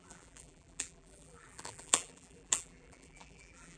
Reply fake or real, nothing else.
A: fake